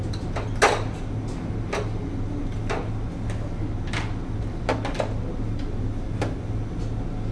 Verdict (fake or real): real